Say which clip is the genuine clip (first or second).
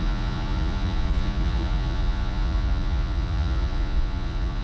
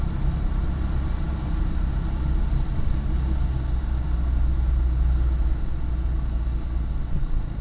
second